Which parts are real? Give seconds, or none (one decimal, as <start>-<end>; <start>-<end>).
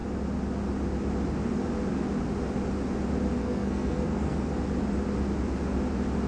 0.0-3.4; 4.5-6.3